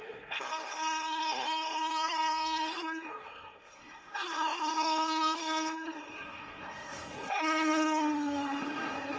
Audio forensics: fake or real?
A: fake